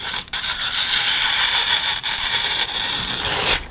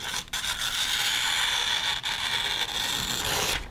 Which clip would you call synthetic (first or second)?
first